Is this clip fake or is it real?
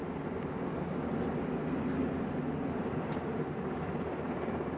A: real